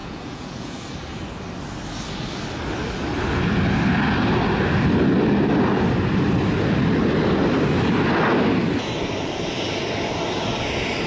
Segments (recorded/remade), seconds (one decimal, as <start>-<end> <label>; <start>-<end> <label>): 0.0-0.8 remade; 0.8-11.1 recorded